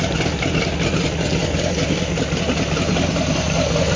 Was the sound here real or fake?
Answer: real